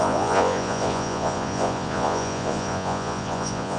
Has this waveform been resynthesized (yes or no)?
yes